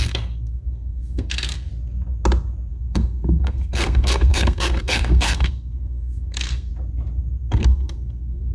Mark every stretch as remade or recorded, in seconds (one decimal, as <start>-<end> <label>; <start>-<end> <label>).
0.0-1.7 remade; 1.7-2.7 recorded; 2.7-6.7 remade; 6.7-7.4 recorded; 7.4-8.5 remade